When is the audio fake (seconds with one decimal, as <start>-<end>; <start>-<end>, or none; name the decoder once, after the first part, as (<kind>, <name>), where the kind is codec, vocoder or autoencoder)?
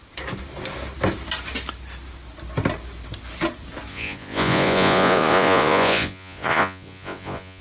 3.9-7.6 (vocoder, Vocos)